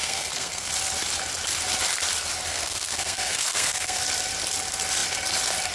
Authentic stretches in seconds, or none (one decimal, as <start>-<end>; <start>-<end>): 0.7-2.5; 4.0-5.7